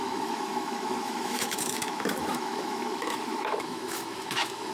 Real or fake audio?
fake